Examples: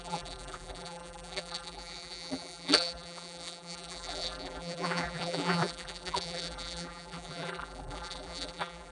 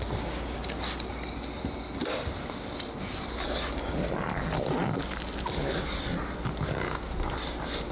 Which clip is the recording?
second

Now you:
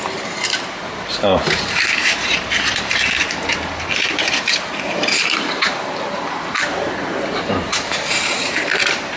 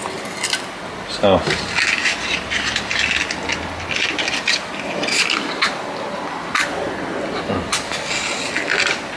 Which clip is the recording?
second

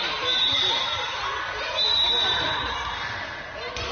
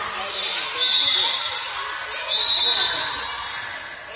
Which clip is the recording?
second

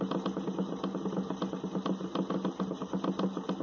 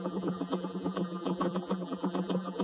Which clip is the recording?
first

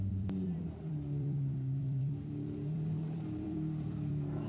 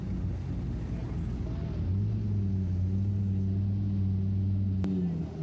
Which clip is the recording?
second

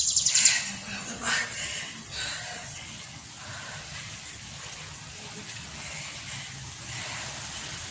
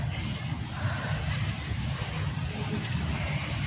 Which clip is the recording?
first